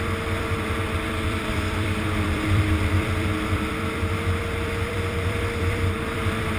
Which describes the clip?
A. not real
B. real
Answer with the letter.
A